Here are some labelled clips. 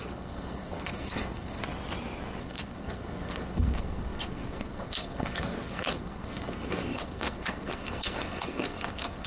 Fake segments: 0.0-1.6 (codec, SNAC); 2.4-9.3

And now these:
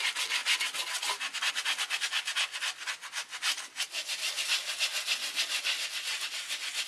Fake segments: none